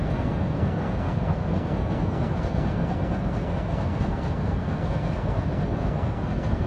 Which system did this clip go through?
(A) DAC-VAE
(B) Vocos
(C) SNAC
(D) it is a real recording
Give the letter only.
C